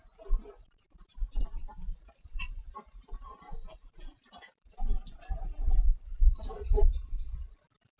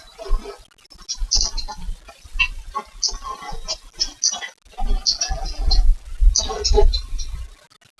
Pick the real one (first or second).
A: second